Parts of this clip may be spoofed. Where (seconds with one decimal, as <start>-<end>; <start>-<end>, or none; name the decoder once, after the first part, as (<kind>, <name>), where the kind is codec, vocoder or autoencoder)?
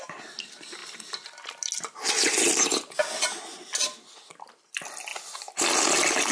none